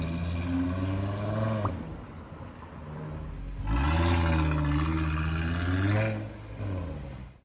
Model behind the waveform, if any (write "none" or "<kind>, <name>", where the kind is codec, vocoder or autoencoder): none